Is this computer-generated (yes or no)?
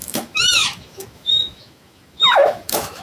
yes